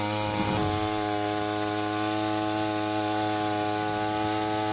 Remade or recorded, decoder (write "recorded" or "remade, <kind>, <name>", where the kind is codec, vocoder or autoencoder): recorded